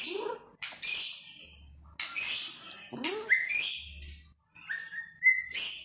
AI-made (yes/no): no